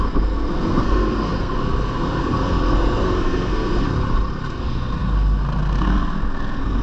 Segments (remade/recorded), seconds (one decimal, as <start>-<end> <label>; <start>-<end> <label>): 0.0-3.9 remade; 3.9-4.6 recorded; 4.6-6.8 remade